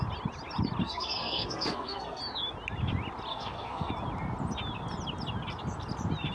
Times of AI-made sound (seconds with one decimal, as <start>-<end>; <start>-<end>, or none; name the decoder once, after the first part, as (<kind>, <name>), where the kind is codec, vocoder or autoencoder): 0.8-2.2 (codec, SNAC); 3.3-3.9